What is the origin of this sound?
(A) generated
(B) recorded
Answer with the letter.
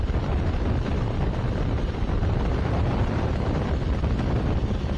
A